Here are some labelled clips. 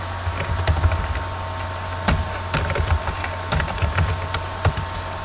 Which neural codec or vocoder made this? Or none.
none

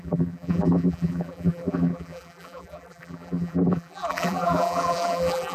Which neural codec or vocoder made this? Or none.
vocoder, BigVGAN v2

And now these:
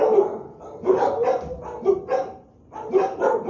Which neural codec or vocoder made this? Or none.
none